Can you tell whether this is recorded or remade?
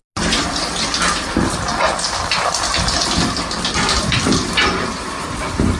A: recorded